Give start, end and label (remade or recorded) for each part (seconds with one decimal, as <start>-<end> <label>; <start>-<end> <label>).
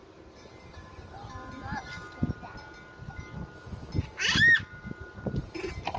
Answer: 0.0-6.0 recorded